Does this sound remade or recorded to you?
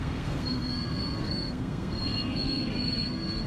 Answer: remade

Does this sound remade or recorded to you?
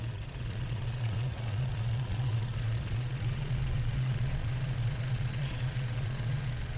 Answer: remade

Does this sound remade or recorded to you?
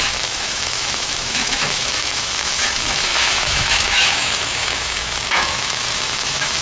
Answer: remade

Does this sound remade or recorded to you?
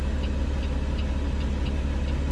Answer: recorded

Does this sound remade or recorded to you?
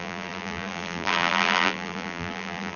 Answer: remade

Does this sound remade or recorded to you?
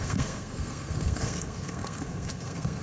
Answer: remade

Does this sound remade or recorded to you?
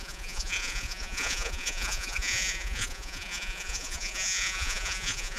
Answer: remade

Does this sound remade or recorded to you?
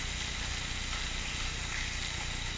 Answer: recorded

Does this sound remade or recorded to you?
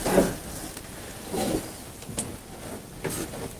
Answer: recorded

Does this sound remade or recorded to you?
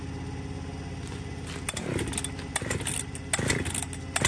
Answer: recorded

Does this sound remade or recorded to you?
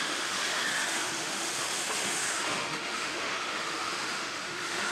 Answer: remade